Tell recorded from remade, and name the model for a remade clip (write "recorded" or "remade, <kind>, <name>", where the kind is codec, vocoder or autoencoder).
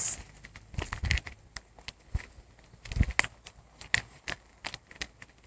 recorded